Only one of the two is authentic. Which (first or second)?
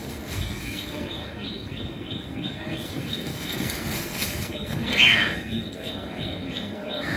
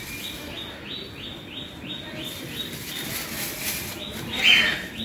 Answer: second